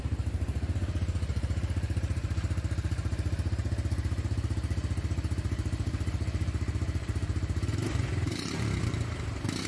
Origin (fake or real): fake